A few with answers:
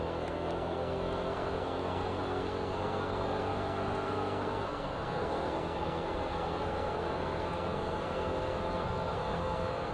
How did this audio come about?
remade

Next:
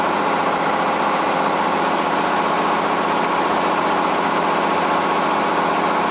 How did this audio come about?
recorded